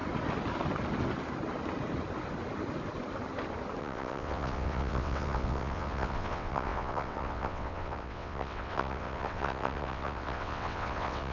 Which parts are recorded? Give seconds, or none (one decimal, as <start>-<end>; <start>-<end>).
0.0-3.8